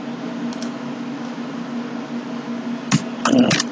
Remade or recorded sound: recorded